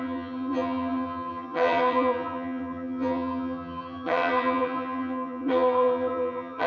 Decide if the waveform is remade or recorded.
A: remade